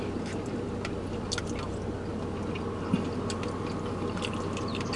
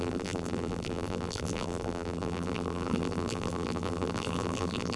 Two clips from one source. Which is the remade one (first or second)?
second